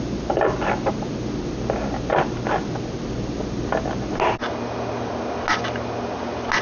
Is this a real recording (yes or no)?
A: yes